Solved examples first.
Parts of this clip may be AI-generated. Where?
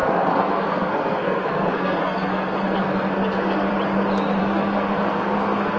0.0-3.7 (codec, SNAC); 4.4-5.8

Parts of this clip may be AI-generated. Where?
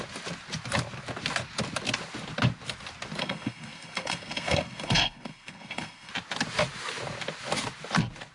3.2-6.1 (codec, SNAC)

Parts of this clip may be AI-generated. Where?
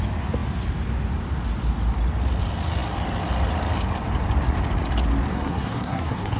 5.3-6.4 (codec, SNAC)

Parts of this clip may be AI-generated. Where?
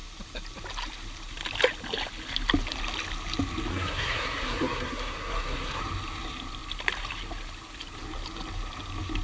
3.7-5.8 (codec, SNAC)